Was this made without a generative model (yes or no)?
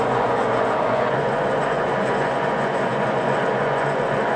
no